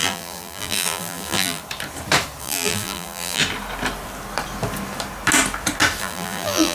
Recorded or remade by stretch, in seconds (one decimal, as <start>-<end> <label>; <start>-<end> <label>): 0.0-1.6 remade; 1.6-2.4 recorded; 2.4-3.4 remade; 3.4-6.0 recorded; 6.0-6.7 remade